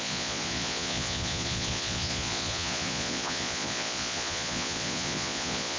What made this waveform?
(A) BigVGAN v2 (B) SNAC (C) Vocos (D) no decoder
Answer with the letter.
C